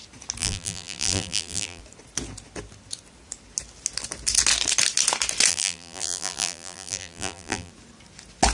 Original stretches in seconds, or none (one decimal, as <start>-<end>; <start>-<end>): 0.0-0.4; 1.8-5.5; 7.7-8.5